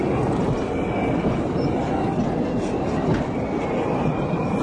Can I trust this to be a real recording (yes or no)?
yes